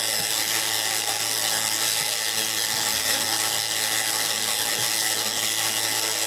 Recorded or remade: remade